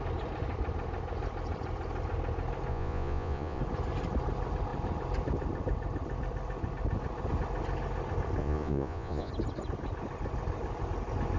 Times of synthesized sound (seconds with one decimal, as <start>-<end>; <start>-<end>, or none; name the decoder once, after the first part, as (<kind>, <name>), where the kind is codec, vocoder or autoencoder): 2.7-3.6 (vocoder, Vocos); 8.4-9.3